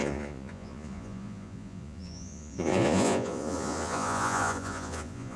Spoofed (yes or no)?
yes